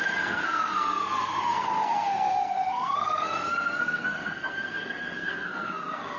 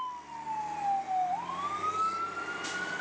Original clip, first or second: second